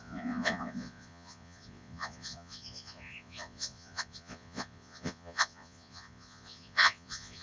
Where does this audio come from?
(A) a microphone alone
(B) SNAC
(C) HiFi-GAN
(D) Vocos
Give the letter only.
D